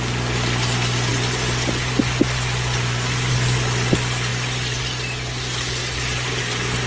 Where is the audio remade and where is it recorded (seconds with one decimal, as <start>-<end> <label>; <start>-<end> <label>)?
0.0-6.9 recorded